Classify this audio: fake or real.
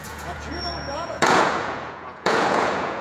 fake